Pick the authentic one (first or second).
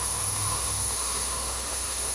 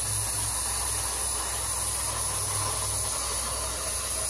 second